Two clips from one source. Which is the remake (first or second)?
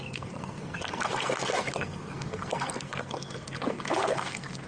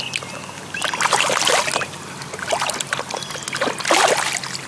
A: first